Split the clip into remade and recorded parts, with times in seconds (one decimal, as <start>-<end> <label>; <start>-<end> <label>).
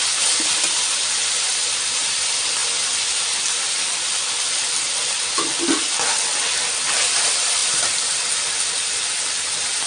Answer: 0.0-1.5 recorded; 1.5-2.1 remade; 2.1-9.9 recorded